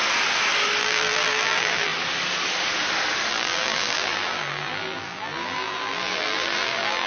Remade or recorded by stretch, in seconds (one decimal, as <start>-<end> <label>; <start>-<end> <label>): 0.0-0.8 recorded; 0.8-1.9 remade; 1.9-3.3 recorded; 3.3-7.1 remade